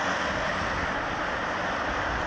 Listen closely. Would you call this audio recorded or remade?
recorded